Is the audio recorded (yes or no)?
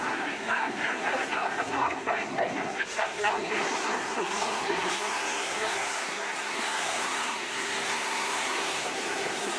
no